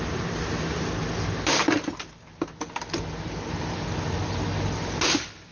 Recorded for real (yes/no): yes